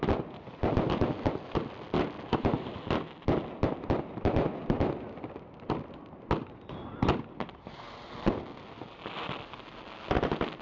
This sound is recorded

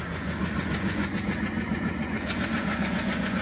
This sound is remade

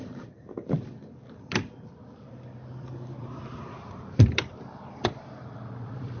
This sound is remade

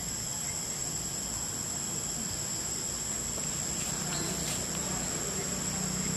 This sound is recorded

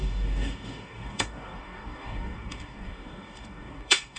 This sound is remade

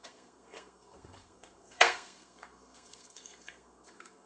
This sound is remade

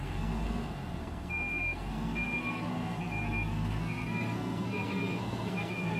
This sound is remade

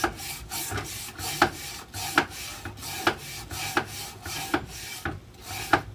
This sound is recorded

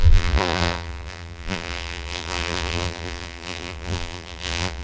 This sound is remade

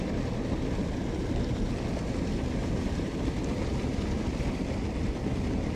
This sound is recorded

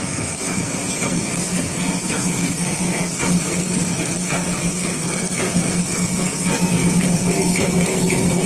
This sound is remade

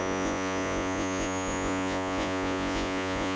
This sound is remade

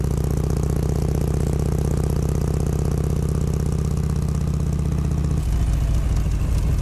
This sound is recorded